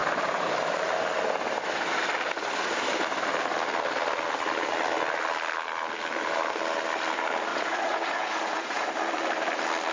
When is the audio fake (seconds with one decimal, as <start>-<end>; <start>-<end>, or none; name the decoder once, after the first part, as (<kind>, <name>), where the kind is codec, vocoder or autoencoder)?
7.5-8.9 (vocoder, Vocos)